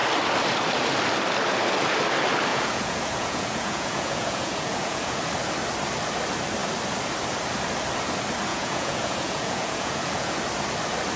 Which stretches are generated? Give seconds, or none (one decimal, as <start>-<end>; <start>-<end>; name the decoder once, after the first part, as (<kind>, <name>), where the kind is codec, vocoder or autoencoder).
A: 2.5-5.2 (vocoder, Vocos); 8.5-10.4